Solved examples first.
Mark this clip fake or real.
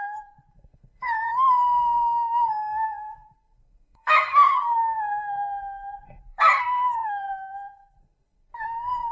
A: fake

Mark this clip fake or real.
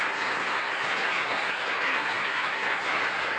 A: fake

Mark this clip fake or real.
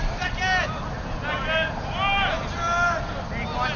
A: real